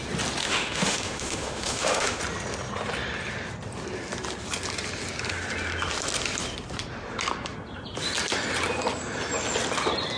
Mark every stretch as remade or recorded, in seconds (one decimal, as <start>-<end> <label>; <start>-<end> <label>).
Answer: 0.0-0.4 recorded; 0.4-2.2 remade; 2.2-10.2 recorded